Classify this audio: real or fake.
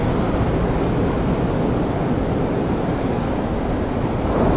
real